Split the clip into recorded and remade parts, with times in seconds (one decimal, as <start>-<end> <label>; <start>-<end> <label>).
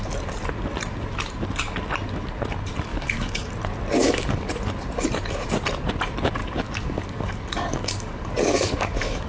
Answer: 0.0-2.9 recorded; 2.9-3.5 remade; 3.5-4.0 recorded; 4.0-4.5 remade; 4.5-6.4 recorded; 6.4-9.3 remade